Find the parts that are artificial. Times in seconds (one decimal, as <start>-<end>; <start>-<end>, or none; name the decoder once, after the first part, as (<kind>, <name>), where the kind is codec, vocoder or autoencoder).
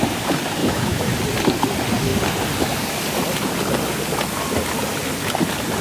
0.6-1.1 (autoencoder, DAC-VAE)